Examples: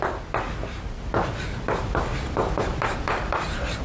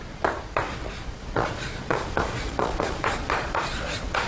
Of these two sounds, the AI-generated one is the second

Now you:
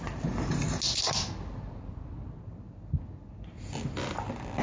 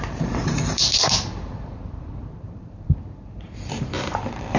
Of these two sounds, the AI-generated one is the second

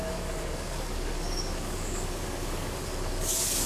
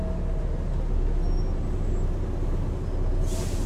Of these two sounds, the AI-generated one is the first